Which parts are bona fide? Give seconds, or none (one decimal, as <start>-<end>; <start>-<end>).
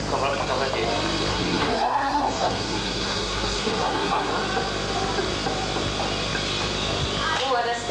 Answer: 0.0-1.3; 4.3-7.9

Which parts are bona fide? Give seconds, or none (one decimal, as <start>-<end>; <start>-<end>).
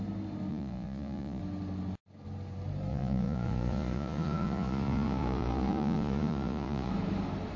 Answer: 0.0-0.5; 1.4-2.9; 6.9-7.6